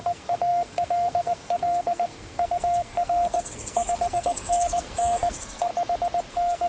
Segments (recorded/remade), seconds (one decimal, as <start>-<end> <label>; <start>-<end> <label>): 0.0-5.7 remade; 5.7-6.3 recorded; 6.3-6.7 remade